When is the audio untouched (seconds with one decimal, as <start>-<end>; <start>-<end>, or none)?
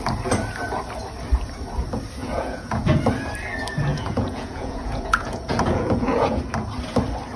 0.0-2.2; 3.0-3.9; 6.4-7.4